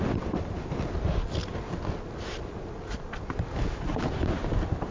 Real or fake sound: real